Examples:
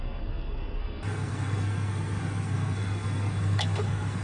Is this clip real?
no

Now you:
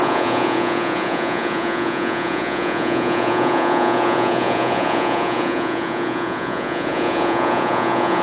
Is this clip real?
no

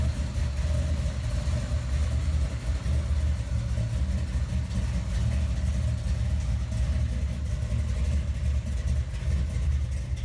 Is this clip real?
yes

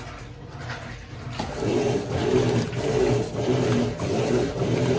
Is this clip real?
yes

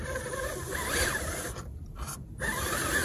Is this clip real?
no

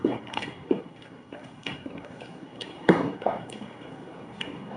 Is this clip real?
no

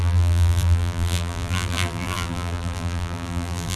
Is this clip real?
no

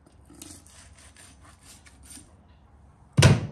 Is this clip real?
yes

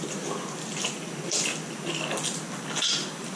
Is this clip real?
yes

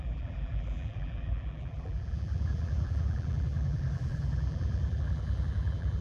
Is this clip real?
no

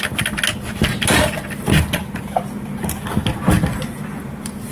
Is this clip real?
yes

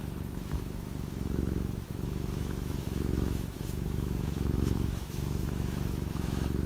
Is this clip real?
no